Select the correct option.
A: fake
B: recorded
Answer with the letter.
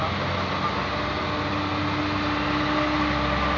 B